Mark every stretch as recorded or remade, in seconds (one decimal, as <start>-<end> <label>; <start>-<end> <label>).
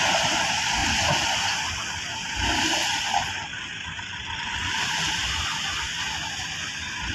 0.0-0.8 recorded; 0.8-5.1 remade; 5.1-7.1 recorded